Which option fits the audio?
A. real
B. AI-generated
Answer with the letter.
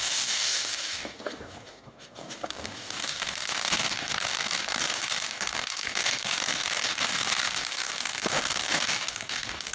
B